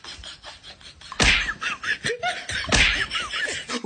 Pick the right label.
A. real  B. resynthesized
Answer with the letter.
A